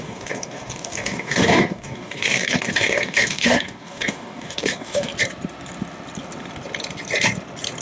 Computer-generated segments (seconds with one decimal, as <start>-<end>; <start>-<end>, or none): 0.0-5.1